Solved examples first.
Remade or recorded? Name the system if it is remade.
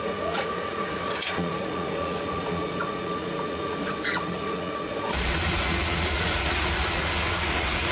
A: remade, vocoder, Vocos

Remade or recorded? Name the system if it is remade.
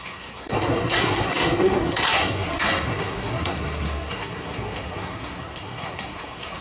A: remade, codec, SNAC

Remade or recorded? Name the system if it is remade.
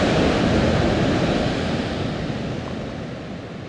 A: recorded